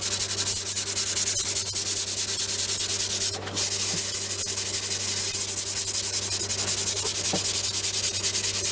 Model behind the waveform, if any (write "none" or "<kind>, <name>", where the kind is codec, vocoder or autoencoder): none